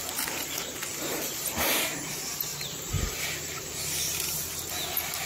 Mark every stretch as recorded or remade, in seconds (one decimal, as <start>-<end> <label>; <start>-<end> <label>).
0.0-0.9 recorded; 0.9-1.9 remade; 1.9-2.5 recorded; 2.5-3.7 remade; 3.7-5.3 recorded